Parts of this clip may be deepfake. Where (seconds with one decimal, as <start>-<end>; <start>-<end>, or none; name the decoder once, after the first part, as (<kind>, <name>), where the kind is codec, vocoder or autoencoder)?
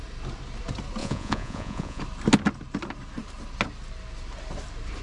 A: 1.0-2.0 (vocoder, Vocos)